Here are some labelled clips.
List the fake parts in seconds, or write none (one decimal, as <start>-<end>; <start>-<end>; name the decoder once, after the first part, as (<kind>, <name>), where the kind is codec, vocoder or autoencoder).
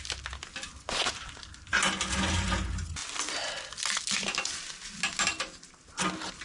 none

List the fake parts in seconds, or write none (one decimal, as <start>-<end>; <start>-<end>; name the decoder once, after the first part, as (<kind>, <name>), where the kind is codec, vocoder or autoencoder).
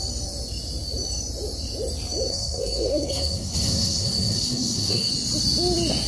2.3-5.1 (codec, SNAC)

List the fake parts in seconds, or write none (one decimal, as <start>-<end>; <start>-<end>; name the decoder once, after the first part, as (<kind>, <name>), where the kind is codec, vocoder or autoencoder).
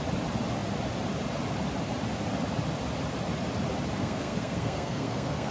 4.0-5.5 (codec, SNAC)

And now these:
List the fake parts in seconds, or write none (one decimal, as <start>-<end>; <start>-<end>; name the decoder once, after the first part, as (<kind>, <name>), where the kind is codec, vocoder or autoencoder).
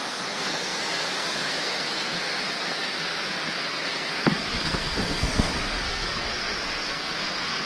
0.0-7.7 (codec, SNAC)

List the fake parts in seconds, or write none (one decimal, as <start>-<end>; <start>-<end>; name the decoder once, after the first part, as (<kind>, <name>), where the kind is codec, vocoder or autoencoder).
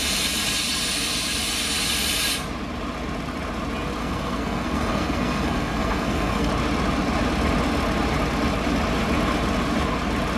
4.0-6.5 (codec, SNAC)